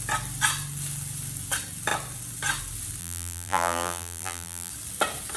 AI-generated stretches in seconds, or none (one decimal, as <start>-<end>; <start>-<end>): 3.0-4.7